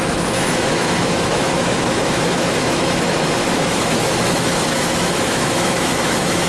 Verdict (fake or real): fake